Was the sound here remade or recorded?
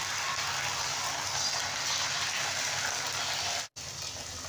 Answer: recorded